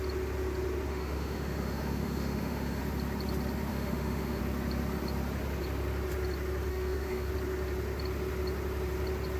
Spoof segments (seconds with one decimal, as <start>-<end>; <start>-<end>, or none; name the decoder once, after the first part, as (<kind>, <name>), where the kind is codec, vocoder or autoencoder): 0.9-2.8 (autoencoder, DAC-VAE); 3.7-4.4; 6.7-7.3

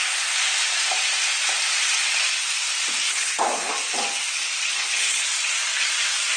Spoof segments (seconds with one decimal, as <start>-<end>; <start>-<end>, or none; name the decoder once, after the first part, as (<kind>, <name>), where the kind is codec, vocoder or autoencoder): 3.1-3.7 (codec, HILCodec); 4.7-5.2

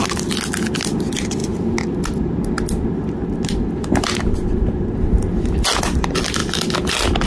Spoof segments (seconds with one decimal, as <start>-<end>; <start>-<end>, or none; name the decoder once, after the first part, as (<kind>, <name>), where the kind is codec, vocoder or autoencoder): none

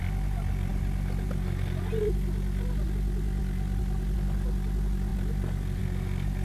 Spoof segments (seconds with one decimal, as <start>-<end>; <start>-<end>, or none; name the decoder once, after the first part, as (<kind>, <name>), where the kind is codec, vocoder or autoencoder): none

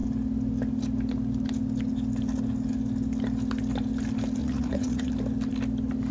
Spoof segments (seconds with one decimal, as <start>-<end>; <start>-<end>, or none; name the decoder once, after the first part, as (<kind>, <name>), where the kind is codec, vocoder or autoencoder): 4.4-5.1 (vocoder, Vocos)

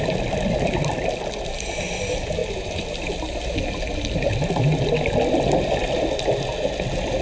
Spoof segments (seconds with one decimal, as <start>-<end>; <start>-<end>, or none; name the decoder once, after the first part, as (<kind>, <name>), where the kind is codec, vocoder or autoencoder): none

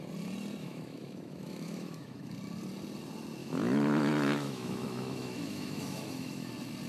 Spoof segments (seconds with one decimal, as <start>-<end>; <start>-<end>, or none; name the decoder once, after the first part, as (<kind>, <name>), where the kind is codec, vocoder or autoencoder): 0.6-2.3 (autoencoder, DAC-VAE); 3.4-6.5